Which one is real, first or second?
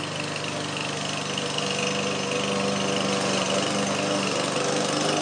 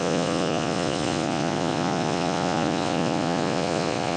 first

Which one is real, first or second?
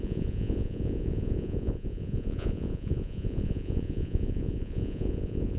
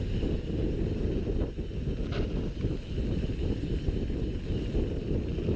second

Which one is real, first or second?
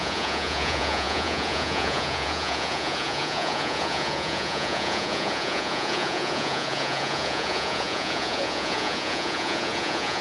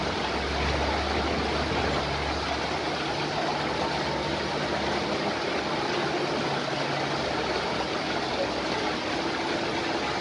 second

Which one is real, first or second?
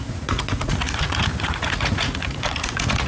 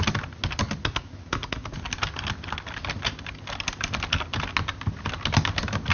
second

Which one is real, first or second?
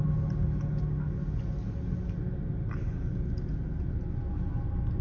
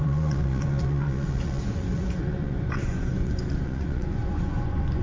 first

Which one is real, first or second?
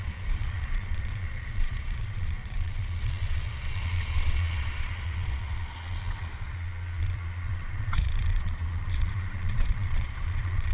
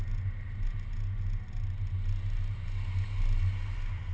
second